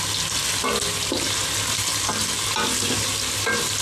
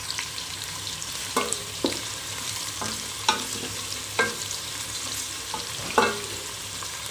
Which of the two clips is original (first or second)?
first